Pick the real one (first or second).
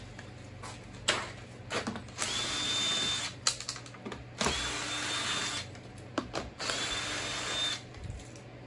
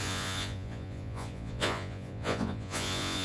first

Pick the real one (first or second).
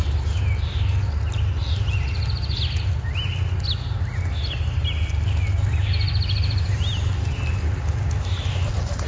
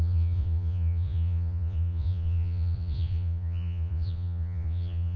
first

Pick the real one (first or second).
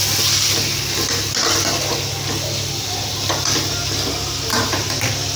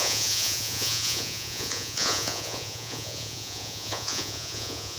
first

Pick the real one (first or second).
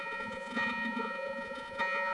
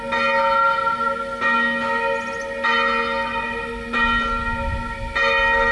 second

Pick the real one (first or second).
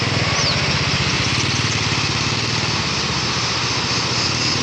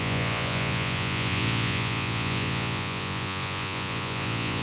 first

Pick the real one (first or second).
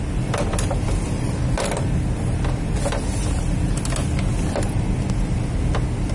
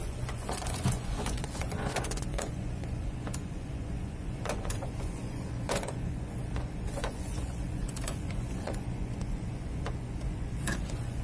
first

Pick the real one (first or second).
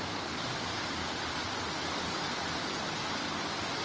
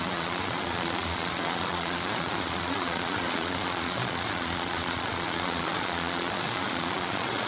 first